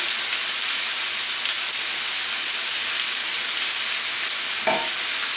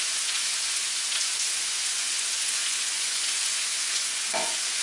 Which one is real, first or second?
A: first